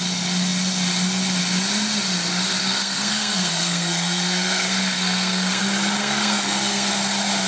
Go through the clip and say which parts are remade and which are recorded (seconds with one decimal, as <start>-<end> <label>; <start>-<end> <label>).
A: 0.0-2.6 recorded; 2.6-5.6 remade; 5.6-6.0 recorded; 6.0-6.9 remade; 6.9-7.5 recorded